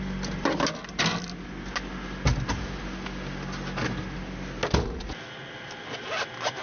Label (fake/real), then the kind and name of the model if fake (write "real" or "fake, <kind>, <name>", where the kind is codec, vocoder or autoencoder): real